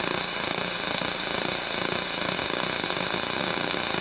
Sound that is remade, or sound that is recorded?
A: recorded